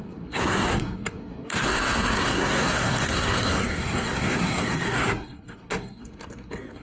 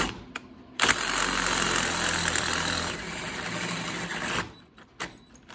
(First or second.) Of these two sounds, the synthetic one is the first